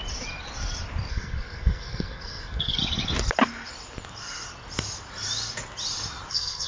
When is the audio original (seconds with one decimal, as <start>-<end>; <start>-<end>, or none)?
0.0-1.1; 2.8-6.3